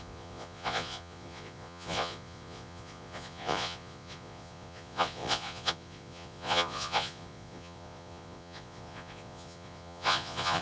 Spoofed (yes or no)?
yes